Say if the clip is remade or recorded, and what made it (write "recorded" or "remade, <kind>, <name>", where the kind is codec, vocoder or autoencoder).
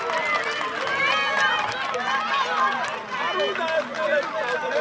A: recorded